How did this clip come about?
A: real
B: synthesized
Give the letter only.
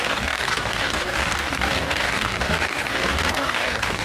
B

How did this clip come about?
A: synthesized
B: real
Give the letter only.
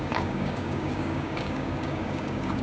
A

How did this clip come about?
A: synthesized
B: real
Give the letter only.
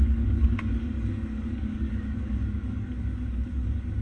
A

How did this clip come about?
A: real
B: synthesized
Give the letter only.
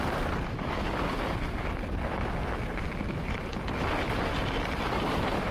A